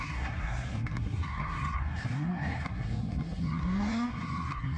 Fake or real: fake